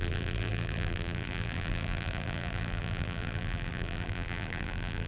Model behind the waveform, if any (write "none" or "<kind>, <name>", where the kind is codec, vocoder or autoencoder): vocoder, BigVGAN v2